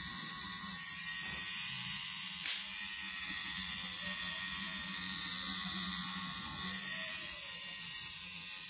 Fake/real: fake